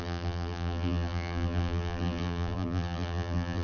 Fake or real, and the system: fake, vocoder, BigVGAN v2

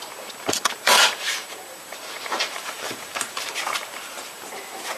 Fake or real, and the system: fake, vocoder, BigVGAN v2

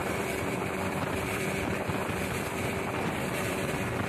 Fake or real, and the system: fake, vocoder, BigVGAN v2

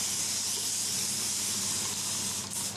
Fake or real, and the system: real